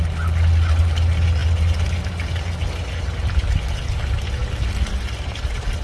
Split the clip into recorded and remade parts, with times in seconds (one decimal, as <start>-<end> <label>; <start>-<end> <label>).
0.0-5.8 recorded